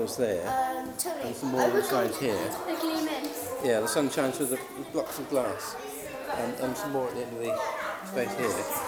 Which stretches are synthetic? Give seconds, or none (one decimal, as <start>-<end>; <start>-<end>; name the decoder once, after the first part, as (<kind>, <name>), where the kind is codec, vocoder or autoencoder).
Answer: none